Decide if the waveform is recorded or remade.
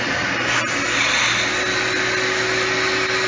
recorded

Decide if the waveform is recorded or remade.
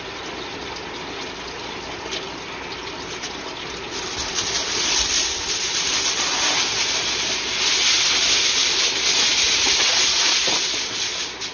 recorded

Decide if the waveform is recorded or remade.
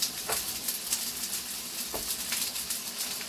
recorded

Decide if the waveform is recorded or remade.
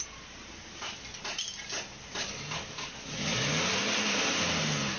recorded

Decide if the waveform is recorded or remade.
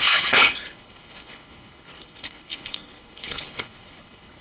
remade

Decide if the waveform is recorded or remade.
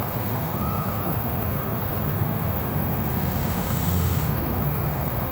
remade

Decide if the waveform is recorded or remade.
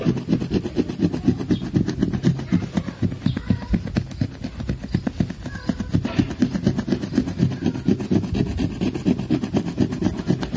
recorded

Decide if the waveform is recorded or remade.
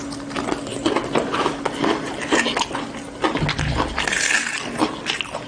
recorded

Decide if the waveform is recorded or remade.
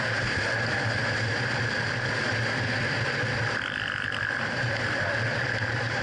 recorded